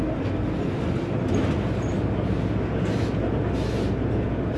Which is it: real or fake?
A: real